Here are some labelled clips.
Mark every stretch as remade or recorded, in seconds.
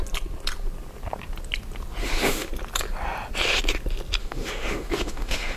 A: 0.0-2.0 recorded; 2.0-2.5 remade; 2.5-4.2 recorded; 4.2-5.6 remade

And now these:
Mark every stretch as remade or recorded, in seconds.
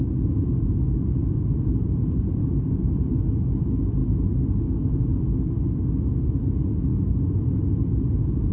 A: 0.0-2.4 recorded; 2.4-3.2 remade; 3.2-8.5 recorded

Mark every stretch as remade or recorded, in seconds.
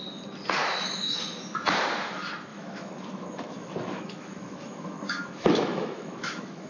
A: 0.0-0.6 recorded; 0.6-1.2 remade; 1.2-2.5 recorded; 2.5-6.7 remade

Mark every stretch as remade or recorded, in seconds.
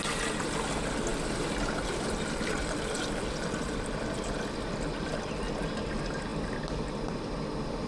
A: 0.0-1.1 recorded; 1.1-5.4 remade; 5.4-7.9 recorded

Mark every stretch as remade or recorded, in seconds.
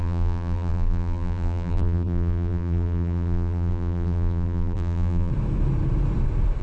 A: 0.0-5.3 remade; 5.3-6.6 recorded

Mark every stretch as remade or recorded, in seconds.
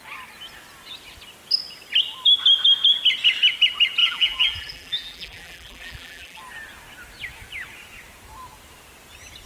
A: 0.0-4.0 recorded; 4.0-6.4 remade; 6.4-9.5 recorded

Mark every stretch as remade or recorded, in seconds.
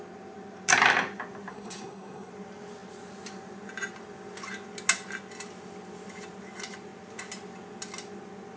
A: 0.0-1.5 recorded; 1.5-2.3 remade; 2.3-8.6 recorded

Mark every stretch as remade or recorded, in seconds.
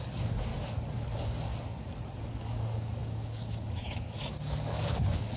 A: 0.0-0.5 remade; 0.5-1.1 recorded; 1.1-1.5 remade; 1.5-2.3 recorded; 2.3-5.4 remade